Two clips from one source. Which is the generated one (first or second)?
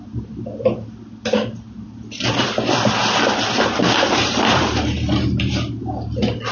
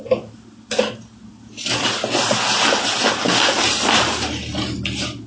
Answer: first